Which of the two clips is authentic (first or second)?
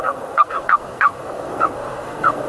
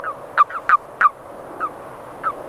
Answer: second